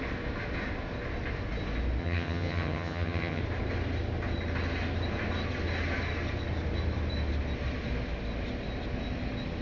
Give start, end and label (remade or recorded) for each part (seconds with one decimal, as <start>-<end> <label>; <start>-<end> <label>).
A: 0.0-2.0 recorded; 2.0-3.4 remade; 3.4-9.6 recorded